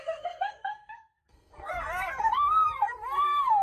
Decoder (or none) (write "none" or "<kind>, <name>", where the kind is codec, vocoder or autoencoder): codec, SNAC